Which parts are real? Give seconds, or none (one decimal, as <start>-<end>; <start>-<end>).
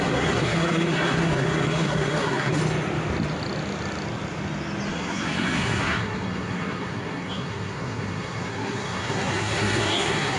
2.6-4.9